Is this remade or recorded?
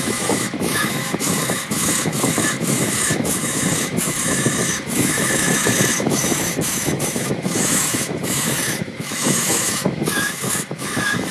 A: remade